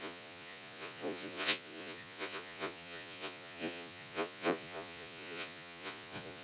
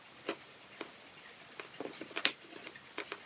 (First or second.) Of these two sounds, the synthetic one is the first